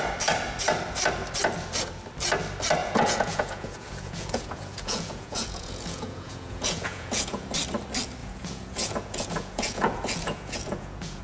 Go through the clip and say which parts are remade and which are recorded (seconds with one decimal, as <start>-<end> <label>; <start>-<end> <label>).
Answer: 0.0-2.8 recorded; 2.8-7.5 remade; 7.5-8.2 recorded; 8.2-11.2 remade